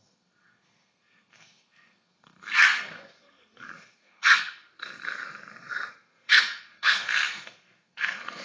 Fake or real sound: fake